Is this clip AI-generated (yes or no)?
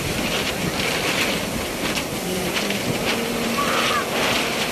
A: no